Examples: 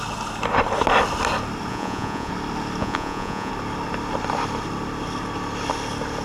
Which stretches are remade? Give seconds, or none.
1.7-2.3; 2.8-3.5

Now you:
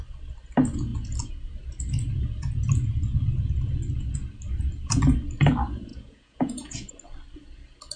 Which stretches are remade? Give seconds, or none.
5.9-6.9